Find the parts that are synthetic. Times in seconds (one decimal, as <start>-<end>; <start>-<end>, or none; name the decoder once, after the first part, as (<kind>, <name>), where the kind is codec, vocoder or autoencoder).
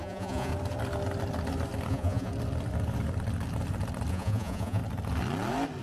0.0-0.5 (vocoder, Vocos); 1.9-2.3; 4.1-4.8